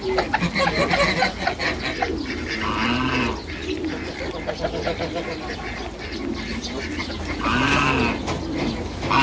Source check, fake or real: real